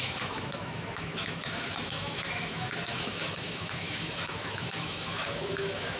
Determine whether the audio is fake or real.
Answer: fake